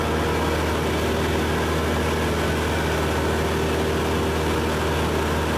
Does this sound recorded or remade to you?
recorded